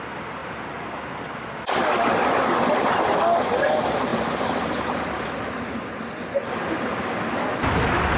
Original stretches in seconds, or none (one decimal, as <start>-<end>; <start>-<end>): 0.0-8.2